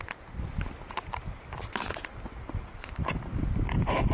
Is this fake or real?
real